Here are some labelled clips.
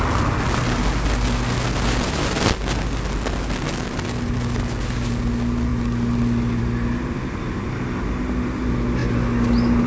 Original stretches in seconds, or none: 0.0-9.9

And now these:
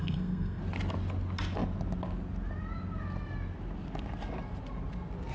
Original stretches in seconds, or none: 0.6-5.3